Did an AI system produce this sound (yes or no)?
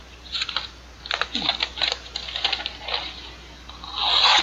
no